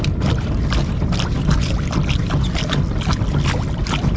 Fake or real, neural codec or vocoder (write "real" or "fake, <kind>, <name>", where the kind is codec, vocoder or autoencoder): real